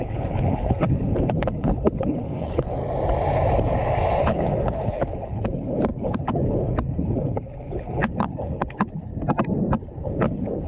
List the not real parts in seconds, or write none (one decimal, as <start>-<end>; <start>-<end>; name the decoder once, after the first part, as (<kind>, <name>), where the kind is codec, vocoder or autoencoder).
0.0-2.8 (codec, HILCodec); 4.2-9.1; 9.8-10.7